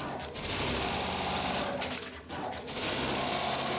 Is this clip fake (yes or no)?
yes